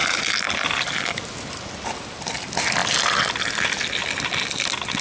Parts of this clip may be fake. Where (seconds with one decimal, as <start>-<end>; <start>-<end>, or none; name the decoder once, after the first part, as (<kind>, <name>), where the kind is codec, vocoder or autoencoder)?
none